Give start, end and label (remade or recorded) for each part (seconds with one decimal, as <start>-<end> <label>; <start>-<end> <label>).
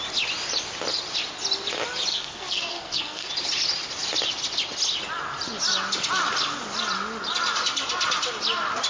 0.0-2.1 recorded; 2.1-3.3 remade; 3.3-8.9 recorded